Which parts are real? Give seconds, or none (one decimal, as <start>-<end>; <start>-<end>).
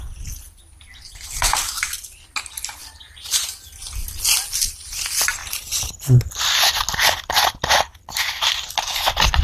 0.0-2.8; 3.5-5.4; 6.3-9.4